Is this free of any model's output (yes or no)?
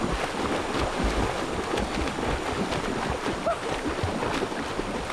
yes